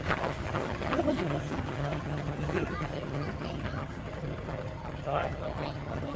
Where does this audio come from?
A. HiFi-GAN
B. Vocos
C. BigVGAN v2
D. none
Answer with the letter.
A